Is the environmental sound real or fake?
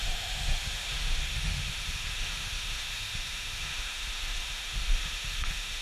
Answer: fake